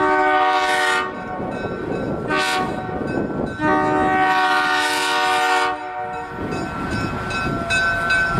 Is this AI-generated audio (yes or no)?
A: no